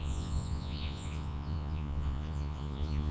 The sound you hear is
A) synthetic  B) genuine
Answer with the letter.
A